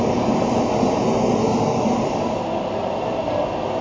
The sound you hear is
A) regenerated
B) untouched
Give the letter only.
B